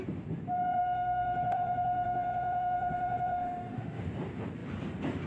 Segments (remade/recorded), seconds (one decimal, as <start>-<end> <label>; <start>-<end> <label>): 0.0-0.8 recorded; 0.8-4.0 remade; 4.0-5.3 recorded